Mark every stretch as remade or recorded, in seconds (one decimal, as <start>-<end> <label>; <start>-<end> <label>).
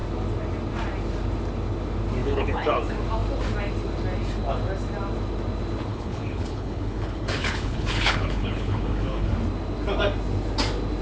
0.0-2.2 recorded; 2.2-2.8 remade; 2.8-5.9 recorded; 5.9-9.3 remade; 9.3-11.0 recorded